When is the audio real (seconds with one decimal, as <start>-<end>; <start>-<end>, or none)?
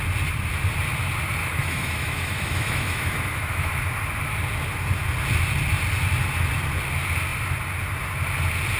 0.0-1.4; 3.7-8.8